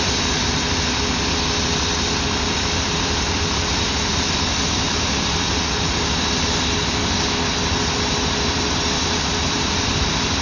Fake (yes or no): no